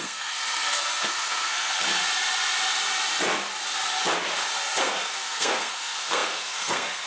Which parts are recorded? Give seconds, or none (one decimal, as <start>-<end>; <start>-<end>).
2.0-4.8